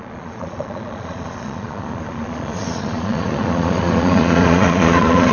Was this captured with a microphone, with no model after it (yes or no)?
no